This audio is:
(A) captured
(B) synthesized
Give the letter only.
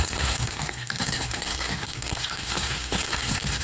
B